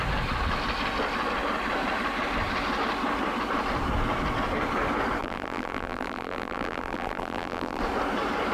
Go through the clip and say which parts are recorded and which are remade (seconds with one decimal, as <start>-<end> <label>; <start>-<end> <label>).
0.0-5.2 recorded; 5.2-7.8 remade; 7.8-8.5 recorded